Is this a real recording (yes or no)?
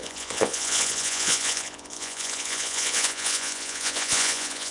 no